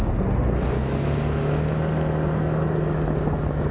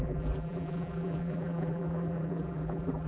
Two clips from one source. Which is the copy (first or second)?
second